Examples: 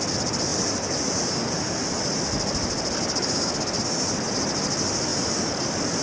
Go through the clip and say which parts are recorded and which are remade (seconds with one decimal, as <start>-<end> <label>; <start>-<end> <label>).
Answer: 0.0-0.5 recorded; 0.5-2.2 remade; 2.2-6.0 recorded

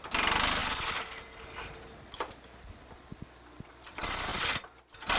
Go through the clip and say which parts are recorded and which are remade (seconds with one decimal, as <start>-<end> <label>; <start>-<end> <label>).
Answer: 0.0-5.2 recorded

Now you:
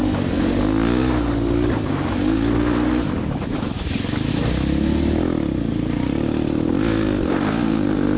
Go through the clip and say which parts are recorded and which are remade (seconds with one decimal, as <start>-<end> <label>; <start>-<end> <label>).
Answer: 0.0-1.0 recorded; 1.0-4.3 remade; 4.3-8.2 recorded

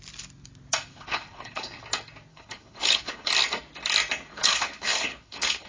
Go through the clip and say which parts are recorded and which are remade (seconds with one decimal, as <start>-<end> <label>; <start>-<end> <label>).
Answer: 0.0-0.9 recorded; 0.9-1.8 remade; 1.8-2.3 recorded; 2.3-3.3 remade; 3.3-4.3 recorded; 4.3-5.7 remade

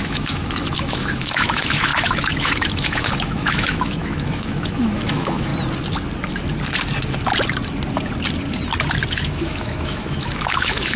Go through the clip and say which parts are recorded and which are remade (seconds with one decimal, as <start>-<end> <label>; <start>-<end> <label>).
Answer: 0.0-5.5 remade; 5.5-9.1 recorded; 9.1-11.0 remade

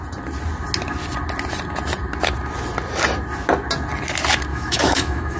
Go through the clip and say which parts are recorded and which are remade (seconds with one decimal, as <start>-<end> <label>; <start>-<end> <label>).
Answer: 0.0-4.5 recorded; 4.5-5.4 remade